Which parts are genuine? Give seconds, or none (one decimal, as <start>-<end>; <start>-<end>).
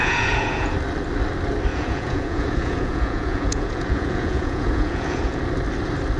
0.7-1.7; 5.4-6.2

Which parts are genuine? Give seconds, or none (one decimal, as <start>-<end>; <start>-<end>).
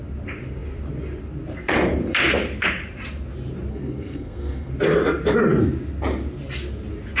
0.0-3.7; 4.7-7.2